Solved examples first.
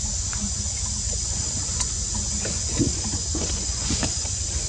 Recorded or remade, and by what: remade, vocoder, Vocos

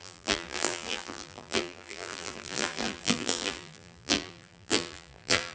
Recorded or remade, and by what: remade, vocoder, BigVGAN v2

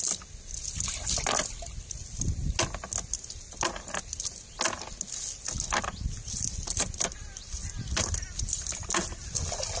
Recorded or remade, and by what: recorded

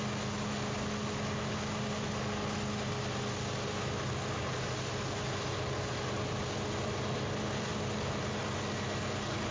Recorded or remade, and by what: recorded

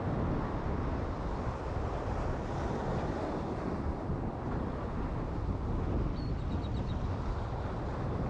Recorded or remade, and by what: recorded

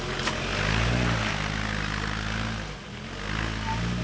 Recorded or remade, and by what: recorded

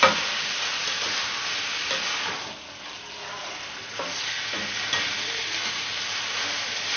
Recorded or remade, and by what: recorded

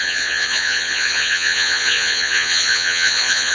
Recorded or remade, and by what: remade, vocoder, Vocos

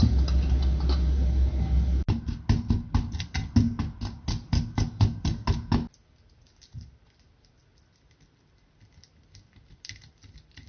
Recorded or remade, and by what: recorded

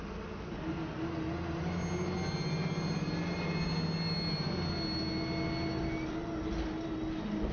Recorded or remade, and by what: recorded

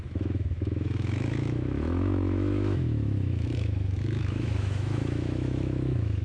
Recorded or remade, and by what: remade, autoencoder, DAC-VAE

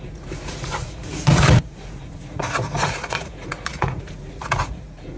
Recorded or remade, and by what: remade, vocoder, Vocos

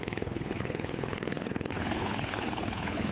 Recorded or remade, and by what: remade, codec, HILCodec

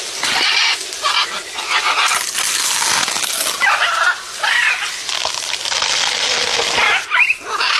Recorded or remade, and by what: recorded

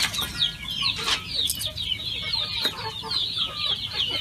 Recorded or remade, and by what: recorded